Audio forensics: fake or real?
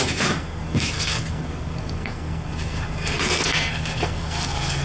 fake